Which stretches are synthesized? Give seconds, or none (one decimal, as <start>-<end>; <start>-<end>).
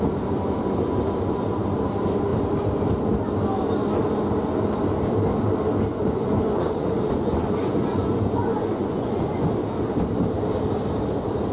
5.9-9.5